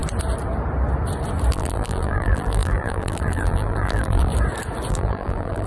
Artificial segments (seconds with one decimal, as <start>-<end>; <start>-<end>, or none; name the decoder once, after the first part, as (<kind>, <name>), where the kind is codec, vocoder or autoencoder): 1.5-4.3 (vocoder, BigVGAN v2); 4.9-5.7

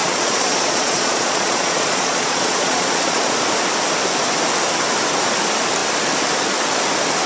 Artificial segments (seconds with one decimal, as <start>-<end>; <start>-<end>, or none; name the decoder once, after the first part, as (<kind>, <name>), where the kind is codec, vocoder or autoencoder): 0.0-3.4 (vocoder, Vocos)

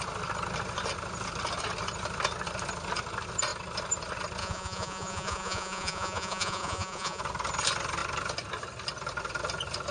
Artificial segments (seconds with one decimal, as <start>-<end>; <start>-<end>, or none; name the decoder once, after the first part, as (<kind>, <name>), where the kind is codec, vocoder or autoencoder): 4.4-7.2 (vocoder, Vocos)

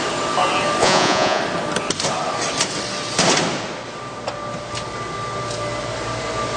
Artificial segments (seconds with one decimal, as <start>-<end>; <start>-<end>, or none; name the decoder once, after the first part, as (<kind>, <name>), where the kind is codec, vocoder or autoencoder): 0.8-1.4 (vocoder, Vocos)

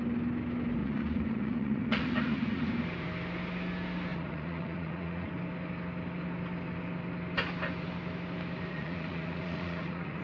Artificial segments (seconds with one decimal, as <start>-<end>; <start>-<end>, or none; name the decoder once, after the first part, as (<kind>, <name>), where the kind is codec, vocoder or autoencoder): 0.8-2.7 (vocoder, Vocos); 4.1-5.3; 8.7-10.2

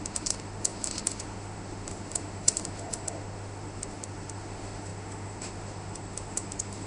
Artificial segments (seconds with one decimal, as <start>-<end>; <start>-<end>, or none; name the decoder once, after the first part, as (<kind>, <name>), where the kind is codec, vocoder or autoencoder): 0.0-6.9 (autoencoder, DAC-VAE)

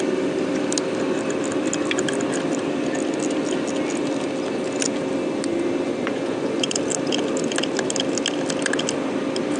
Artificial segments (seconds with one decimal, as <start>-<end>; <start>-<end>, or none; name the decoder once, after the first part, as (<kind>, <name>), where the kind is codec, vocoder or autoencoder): 6.0-6.8 (vocoder, Vocos)

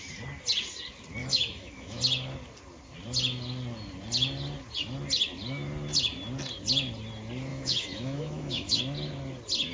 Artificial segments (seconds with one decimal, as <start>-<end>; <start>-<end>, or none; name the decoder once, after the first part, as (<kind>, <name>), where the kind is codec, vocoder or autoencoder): 1.2-2.0 (autoencoder, DAC-VAE); 7.5-8.8